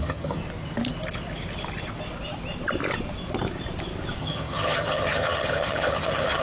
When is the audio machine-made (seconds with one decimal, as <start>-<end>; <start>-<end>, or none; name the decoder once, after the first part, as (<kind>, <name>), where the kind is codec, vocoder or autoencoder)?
0.0-0.4 (vocoder, HiFi-GAN); 4.2-6.4